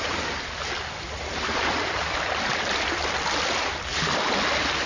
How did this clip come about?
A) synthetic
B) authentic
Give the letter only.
B